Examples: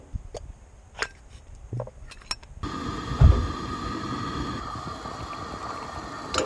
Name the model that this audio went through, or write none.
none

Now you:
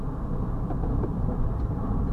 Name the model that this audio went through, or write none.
vocoder, BigVGAN v2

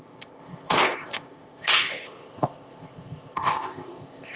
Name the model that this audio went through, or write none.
codec, ZipCodec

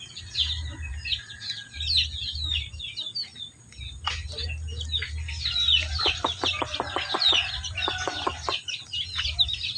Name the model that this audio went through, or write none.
none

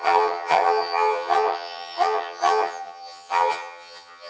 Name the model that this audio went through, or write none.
vocoder, HiFi-GAN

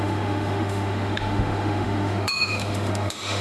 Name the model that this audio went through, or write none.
autoencoder, DAC-VAE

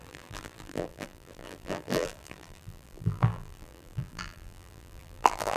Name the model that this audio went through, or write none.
vocoder, BigVGAN v2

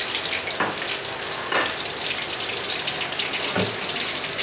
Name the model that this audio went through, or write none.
none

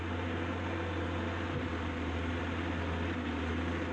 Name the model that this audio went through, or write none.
none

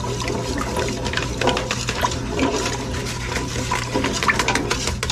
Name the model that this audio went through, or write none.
none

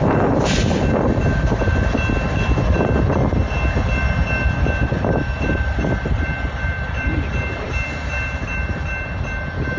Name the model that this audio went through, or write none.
none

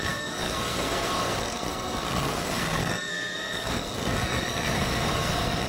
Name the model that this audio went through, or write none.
codec, SNAC